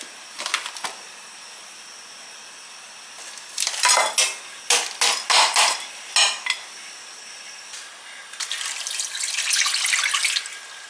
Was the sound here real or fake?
real